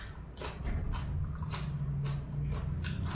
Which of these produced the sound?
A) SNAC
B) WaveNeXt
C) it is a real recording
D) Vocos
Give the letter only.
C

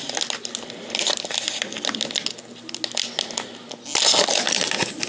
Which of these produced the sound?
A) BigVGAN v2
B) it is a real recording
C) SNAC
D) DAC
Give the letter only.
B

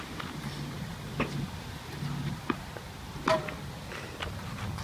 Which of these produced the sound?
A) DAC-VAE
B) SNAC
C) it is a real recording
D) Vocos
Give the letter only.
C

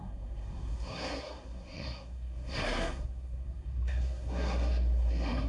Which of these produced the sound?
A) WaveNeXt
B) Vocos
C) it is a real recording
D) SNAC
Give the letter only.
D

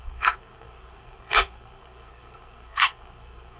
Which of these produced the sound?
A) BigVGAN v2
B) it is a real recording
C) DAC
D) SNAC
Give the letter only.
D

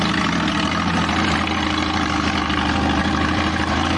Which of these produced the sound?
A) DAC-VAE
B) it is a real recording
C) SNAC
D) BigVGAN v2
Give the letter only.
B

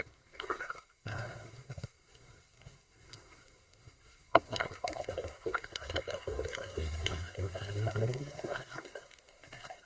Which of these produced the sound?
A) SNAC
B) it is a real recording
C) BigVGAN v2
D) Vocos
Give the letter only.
A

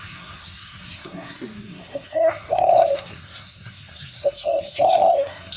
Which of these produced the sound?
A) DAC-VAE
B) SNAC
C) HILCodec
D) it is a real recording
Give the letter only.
B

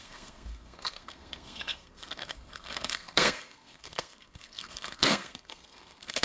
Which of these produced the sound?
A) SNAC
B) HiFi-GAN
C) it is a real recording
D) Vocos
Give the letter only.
A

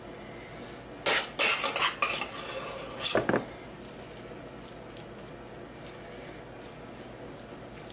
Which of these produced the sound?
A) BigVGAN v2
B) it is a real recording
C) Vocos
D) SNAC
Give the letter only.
B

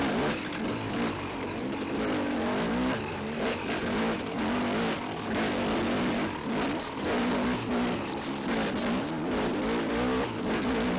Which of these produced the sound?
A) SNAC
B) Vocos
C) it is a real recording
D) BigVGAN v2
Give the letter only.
C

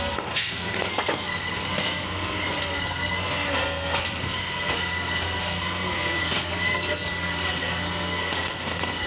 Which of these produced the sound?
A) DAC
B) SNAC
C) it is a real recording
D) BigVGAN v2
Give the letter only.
B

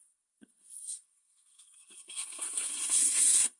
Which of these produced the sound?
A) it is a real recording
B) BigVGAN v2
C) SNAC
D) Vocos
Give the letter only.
C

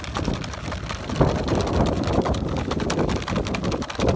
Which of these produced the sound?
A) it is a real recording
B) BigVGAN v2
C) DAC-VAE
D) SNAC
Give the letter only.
A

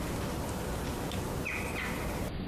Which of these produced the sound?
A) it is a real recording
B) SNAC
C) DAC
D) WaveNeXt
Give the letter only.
A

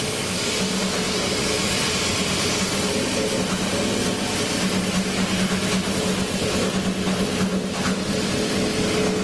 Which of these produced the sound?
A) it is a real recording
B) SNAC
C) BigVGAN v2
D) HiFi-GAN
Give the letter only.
A